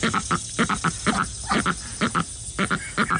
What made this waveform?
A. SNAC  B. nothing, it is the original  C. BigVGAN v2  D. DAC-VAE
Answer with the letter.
B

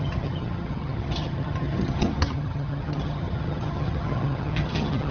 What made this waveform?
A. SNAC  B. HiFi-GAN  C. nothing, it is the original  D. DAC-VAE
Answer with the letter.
B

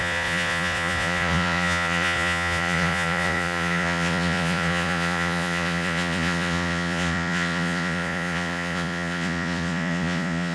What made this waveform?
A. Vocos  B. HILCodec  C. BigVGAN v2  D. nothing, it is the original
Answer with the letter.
A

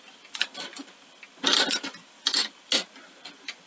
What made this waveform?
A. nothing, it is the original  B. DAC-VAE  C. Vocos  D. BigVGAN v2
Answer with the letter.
A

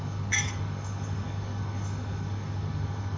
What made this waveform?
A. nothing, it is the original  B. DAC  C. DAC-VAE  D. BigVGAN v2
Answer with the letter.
B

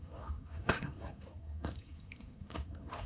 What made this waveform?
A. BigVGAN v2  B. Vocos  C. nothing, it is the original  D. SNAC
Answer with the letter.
D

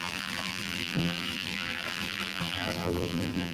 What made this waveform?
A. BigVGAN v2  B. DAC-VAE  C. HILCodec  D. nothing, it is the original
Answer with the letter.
A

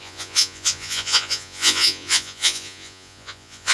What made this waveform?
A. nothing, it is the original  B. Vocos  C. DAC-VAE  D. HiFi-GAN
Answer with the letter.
B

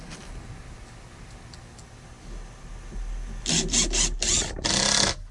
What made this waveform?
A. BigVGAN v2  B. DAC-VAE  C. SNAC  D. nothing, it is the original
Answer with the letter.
D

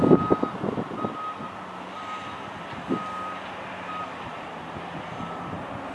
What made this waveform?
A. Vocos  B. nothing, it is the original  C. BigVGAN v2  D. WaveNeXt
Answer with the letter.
B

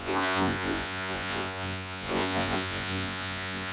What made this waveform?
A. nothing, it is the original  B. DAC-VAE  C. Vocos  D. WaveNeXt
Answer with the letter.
C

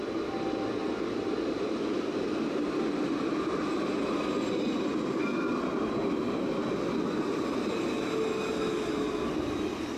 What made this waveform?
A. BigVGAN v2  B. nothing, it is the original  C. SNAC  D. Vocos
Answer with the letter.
B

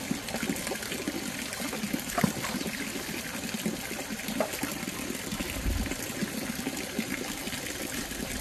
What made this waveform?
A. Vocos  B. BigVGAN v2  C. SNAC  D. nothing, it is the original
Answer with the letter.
D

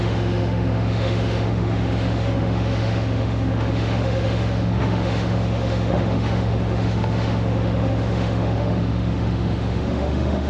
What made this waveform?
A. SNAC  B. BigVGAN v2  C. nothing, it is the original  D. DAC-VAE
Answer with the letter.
D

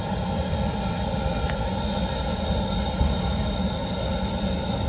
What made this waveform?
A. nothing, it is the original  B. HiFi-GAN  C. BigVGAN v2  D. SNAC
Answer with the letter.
A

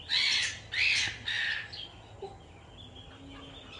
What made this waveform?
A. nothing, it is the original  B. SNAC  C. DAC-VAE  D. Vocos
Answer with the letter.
A